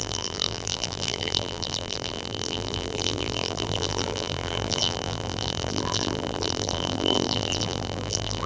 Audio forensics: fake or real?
fake